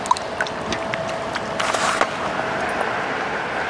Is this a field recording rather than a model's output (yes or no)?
yes